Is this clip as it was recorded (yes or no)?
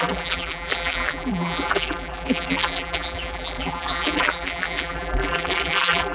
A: no